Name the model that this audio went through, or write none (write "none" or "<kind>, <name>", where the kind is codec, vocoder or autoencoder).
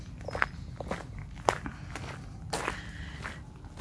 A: none